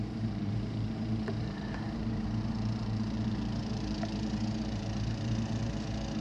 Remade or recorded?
remade